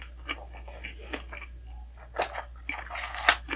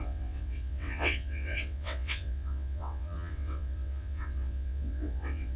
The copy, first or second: second